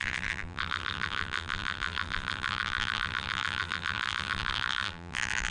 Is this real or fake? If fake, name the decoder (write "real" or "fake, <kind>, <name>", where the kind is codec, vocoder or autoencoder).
fake, vocoder, BigVGAN v2